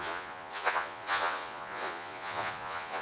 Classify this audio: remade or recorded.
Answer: remade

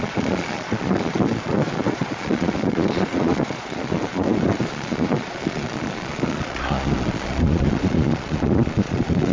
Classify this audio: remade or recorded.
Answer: remade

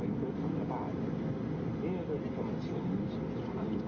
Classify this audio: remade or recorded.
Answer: recorded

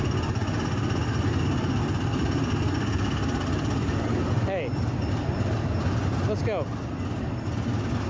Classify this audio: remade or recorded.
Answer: recorded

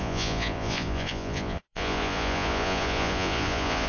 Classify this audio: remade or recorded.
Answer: remade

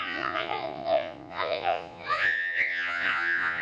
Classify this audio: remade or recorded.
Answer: remade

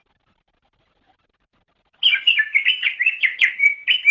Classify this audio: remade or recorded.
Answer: recorded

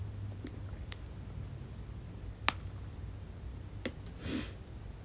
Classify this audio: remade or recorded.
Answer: recorded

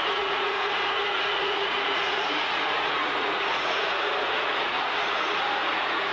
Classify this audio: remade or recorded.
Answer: remade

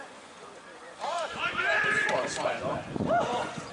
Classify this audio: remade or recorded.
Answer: remade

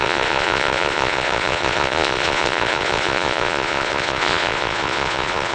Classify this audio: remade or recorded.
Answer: remade